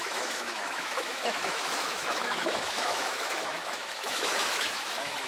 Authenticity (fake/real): fake